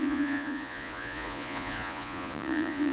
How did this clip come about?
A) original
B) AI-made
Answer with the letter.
B